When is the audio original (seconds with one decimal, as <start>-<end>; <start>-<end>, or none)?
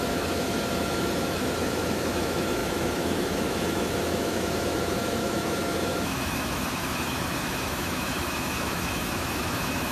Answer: none